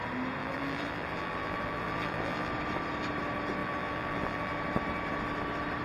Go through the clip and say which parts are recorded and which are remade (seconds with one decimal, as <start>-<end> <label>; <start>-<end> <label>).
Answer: 0.0-0.4 recorded; 0.4-2.5 remade; 2.5-3.6 recorded; 3.6-4.5 remade; 4.5-5.8 recorded